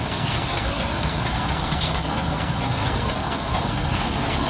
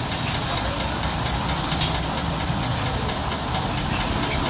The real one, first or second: second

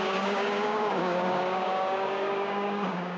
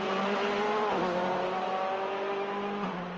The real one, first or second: second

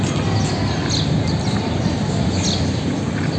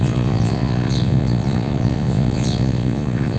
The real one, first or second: first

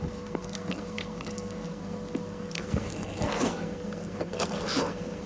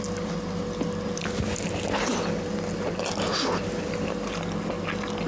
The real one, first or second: second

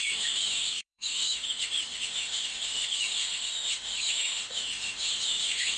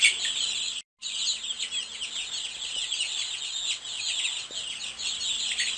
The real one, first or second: second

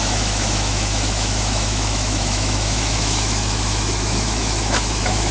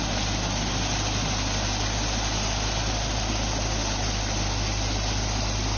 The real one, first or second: second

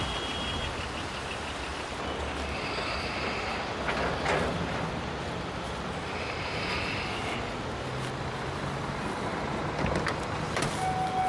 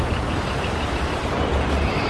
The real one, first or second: first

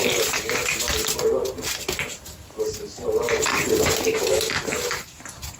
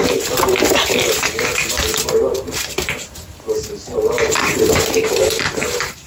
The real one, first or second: first